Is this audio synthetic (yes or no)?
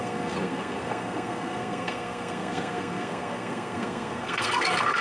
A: yes